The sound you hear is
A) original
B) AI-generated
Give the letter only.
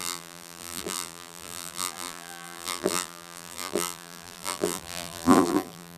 B